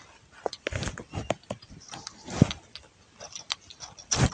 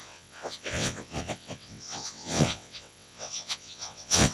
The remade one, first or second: second